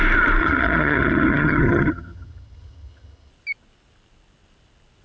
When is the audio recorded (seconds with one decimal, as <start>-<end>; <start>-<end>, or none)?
0.0-0.4; 3.3-5.0